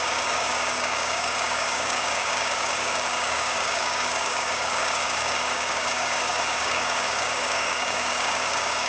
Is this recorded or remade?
remade